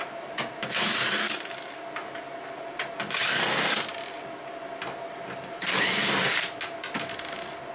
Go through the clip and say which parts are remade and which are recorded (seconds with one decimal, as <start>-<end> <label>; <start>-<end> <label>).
0.0-1.2 recorded; 1.2-1.8 remade; 1.8-7.7 recorded